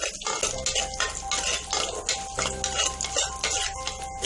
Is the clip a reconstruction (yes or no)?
no